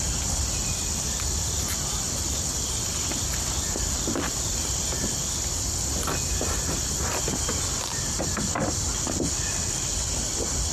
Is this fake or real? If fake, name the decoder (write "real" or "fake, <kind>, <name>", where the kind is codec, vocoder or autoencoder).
real